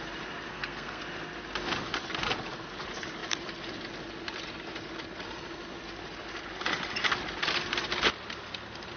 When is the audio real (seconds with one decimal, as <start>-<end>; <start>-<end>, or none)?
0.0-0.5; 1.0-9.0